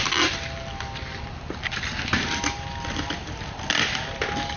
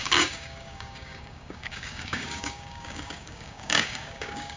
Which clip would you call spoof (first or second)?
second